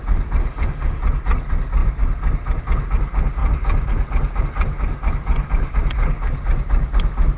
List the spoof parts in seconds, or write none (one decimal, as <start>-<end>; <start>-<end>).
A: 0.4-1.0